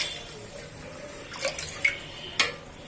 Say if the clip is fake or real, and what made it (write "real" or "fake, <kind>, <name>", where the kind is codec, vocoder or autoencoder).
real